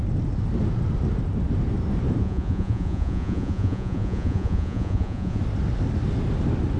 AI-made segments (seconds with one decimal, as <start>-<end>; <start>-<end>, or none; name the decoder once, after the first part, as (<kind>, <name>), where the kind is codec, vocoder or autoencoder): 2.2-5.4 (vocoder, Vocos)